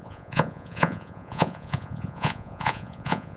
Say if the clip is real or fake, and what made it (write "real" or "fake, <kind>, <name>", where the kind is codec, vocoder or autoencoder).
fake, vocoder, Vocos